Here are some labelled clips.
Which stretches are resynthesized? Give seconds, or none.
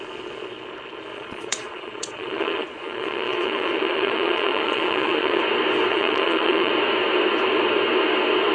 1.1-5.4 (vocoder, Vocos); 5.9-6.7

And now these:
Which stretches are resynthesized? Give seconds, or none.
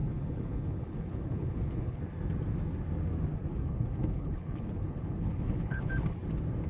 0.0-2.0 (codec, HILCodec); 3.5-5.9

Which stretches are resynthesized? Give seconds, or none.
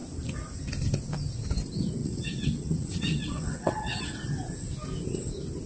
2.0-4.0 (vocoder, WaveNeXt)